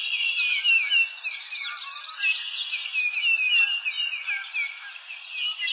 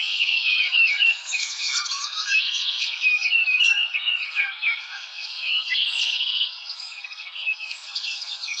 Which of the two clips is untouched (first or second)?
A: first